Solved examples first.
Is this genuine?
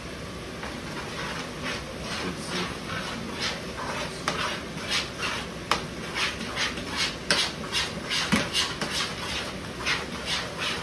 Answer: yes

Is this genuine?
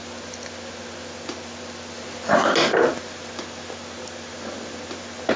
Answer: yes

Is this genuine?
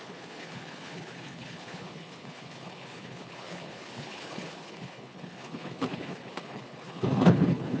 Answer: no